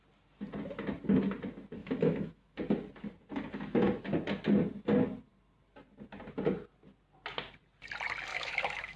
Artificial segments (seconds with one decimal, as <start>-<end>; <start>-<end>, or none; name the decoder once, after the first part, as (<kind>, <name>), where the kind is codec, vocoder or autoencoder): 1.8-2.6 (autoencoder, DAC-VAE); 8.3-9.0